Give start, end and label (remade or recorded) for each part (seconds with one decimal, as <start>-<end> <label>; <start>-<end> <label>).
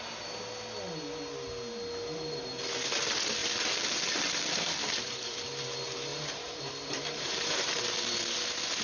0.0-3.4 recorded; 3.4-5.4 remade; 5.4-6.1 recorded; 6.1-7.8 remade; 7.8-8.8 recorded